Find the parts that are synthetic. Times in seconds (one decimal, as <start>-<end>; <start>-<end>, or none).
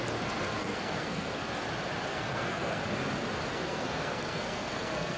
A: 0.6-1.5; 2.1-2.8; 3.5-5.2